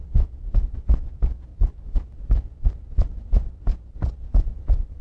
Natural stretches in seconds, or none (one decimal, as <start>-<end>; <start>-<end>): 1.5-4.2